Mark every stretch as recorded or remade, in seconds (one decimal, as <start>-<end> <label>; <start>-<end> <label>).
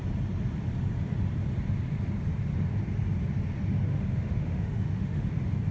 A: 0.0-3.9 recorded; 3.9-5.3 remade; 5.3-5.7 recorded